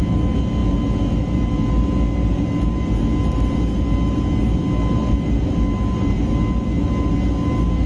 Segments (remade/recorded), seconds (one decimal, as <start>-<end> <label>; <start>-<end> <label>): 0.0-7.9 recorded